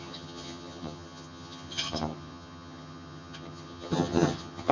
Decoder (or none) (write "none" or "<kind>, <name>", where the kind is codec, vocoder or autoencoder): vocoder, HiFi-GAN